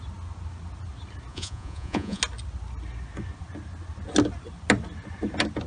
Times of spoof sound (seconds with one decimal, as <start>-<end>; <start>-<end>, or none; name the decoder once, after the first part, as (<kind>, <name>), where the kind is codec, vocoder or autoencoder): 1.3-2.2 (vocoder, Vocos)